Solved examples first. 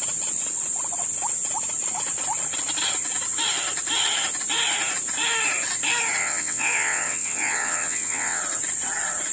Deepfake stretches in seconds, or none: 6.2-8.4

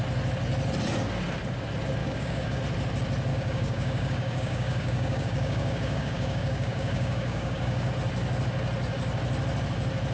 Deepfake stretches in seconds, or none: 2.0-2.6; 3.3-7.9

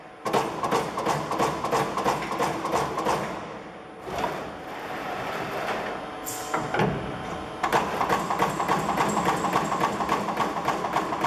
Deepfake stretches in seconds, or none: none

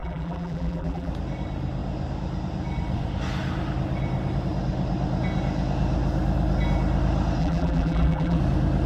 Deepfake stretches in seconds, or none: 0.0-1.1; 7.4-8.4